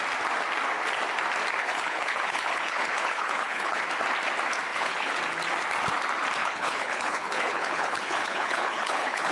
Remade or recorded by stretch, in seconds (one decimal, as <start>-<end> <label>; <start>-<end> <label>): 0.0-1.6 recorded; 1.6-3.8 remade; 3.8-4.7 recorded; 4.7-5.2 remade; 5.2-6.4 recorded; 6.4-9.3 remade